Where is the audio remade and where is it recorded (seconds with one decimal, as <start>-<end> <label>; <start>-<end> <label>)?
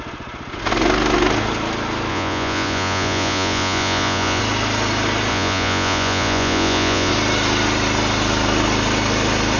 0.0-2.1 recorded; 2.1-4.4 remade; 4.4-5.3 recorded; 5.3-7.1 remade; 7.1-9.6 recorded